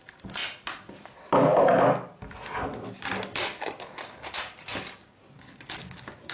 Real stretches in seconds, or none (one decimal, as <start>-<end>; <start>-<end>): 0.4-4.2; 4.7-5.6